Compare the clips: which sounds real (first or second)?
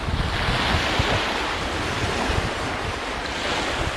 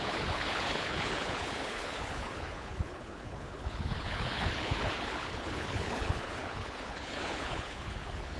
first